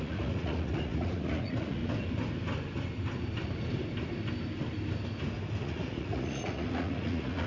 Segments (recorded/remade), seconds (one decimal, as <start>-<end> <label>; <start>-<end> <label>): 0.0-1.8 remade; 1.8-5.6 recorded; 5.6-7.5 remade